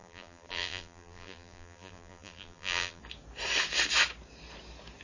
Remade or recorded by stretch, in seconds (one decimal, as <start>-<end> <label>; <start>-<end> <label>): 0.0-3.0 remade; 3.0-5.0 recorded